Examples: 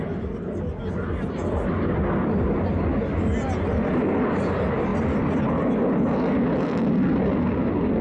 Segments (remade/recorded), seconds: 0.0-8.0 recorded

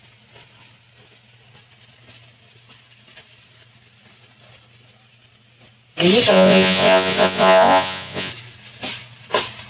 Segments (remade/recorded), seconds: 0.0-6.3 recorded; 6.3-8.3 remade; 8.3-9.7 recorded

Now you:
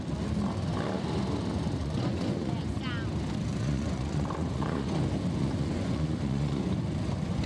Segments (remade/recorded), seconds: 0.0-1.8 recorded; 1.8-2.7 remade; 2.7-3.5 recorded; 3.5-5.0 remade; 5.0-5.4 recorded; 5.4-6.6 remade; 6.6-7.5 recorded

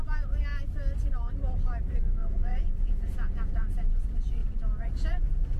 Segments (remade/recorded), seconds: 0.0-2.2 recorded; 2.2-3.7 remade; 3.7-4.4 recorded; 4.4-5.6 remade

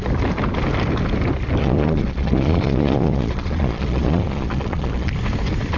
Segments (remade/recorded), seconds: 0.0-1.6 recorded; 1.6-5.1 remade; 5.1-5.8 recorded